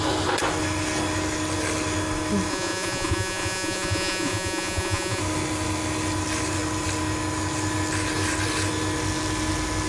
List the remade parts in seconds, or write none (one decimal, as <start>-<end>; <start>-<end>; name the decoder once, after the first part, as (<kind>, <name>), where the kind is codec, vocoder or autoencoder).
2.5-5.2 (vocoder, Vocos)